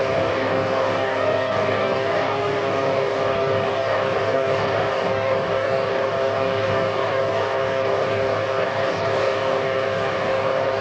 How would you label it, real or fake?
fake